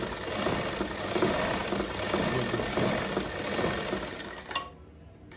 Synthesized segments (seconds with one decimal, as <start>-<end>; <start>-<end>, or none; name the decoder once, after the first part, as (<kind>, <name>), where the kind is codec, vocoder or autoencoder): none